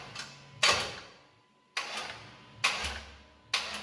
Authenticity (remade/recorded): recorded